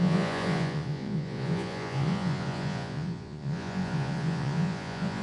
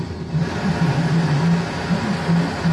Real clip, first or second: second